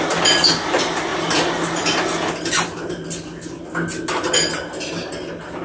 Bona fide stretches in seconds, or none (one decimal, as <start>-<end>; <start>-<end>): 0.0-5.6